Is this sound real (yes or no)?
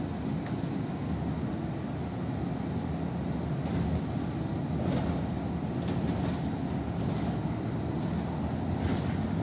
yes